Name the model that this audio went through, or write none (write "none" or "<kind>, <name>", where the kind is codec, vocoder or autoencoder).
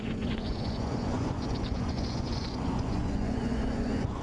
vocoder, Vocos